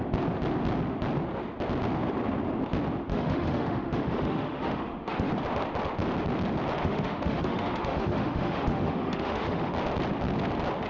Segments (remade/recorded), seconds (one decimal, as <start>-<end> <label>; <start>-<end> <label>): 0.0-3.1 recorded; 3.1-5.3 remade; 5.3-6.8 recorded; 6.8-9.7 remade; 9.7-10.9 recorded